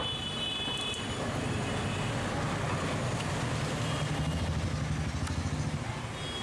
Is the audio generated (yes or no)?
no